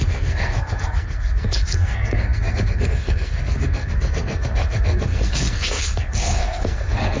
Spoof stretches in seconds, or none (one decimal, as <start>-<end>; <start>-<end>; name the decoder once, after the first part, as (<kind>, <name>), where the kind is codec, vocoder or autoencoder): 0.0-7.2 (codec, SNAC)